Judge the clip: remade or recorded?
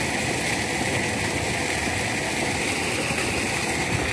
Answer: recorded